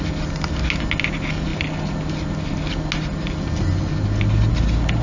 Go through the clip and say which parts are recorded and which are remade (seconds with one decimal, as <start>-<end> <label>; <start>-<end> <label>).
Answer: 0.0-5.0 recorded